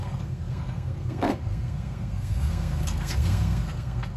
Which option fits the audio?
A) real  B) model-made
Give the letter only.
B